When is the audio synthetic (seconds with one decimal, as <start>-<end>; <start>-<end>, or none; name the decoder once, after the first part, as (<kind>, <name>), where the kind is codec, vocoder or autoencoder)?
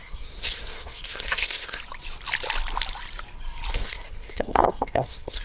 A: 0.0-1.8 (codec, SNAC); 3.7-5.4